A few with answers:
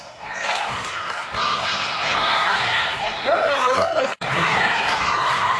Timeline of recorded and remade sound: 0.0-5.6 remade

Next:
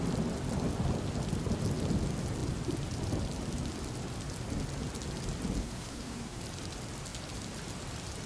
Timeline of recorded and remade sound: 0.0-5.6 recorded; 5.6-6.4 remade; 6.4-8.3 recorded